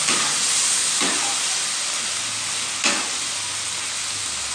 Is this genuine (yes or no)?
yes